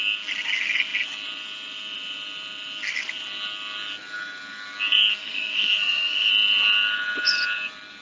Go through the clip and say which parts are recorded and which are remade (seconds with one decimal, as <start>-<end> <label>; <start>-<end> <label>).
0.0-5.1 recorded; 5.1-6.3 remade; 6.3-8.0 recorded